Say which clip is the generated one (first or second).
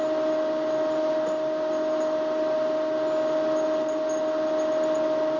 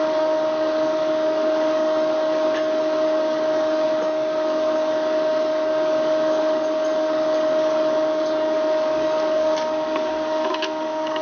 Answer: second